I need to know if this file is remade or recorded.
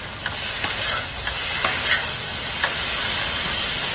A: recorded